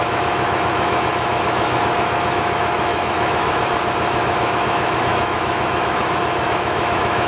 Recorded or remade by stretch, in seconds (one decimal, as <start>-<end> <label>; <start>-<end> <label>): 0.0-7.3 remade